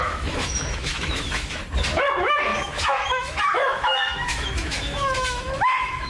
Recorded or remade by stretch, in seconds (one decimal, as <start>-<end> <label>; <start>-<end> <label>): 0.0-1.6 remade; 1.6-2.1 recorded; 2.1-6.1 remade